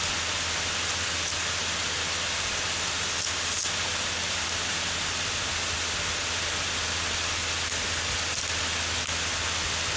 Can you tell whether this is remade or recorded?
recorded